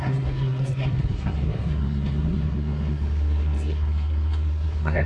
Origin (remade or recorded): remade